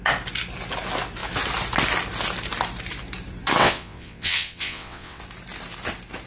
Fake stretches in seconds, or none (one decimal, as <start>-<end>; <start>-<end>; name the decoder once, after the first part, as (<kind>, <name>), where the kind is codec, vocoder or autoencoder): 3.6-5.2 (vocoder, WaveNeXt)